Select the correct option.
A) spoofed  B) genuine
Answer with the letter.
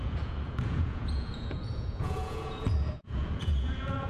A